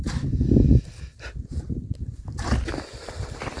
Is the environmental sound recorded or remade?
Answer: recorded